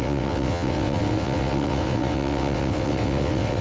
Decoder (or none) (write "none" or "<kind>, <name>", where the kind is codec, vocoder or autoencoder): vocoder, WaveNeXt